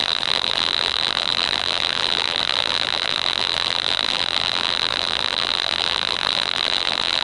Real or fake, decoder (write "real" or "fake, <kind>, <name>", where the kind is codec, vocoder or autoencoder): fake, vocoder, BigVGAN v2